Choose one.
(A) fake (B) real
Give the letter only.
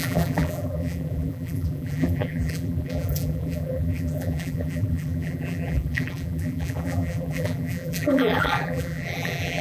A